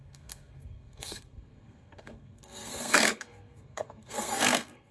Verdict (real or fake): fake